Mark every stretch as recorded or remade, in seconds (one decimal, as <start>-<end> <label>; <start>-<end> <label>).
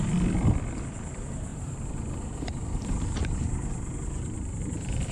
0.0-1.5 recorded; 1.5-4.6 remade; 4.6-5.1 recorded